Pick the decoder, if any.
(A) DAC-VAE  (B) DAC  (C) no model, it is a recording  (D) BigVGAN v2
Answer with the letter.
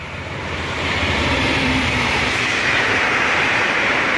D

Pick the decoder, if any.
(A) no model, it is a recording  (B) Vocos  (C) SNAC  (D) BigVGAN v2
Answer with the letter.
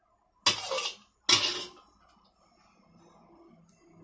A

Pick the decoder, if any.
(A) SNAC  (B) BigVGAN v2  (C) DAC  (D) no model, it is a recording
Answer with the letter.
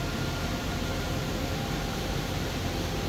B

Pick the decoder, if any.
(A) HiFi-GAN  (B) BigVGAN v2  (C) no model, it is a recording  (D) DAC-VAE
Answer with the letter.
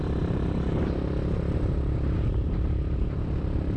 C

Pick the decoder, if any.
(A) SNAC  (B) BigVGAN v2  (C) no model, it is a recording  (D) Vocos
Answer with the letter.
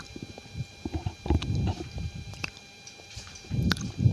B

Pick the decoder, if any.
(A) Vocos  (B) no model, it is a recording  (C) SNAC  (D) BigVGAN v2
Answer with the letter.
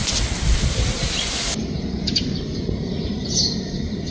D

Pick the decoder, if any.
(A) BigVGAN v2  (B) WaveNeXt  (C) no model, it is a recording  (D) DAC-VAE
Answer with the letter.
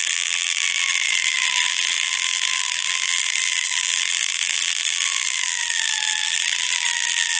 A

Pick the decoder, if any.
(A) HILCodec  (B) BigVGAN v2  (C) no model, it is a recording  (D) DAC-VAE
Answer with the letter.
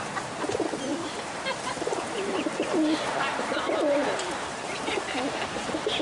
B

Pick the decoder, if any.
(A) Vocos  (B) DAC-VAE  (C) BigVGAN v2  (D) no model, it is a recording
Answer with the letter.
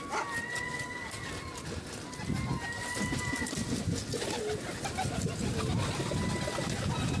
D